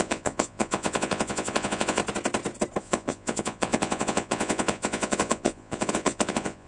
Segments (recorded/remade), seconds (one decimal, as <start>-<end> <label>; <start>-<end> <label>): 0.0-2.0 remade; 2.0-2.8 recorded; 2.8-6.7 remade